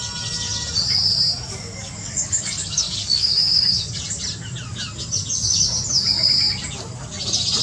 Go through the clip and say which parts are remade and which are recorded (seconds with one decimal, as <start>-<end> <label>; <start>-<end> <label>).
0.0-1.5 recorded; 1.5-4.0 remade; 4.0-7.6 recorded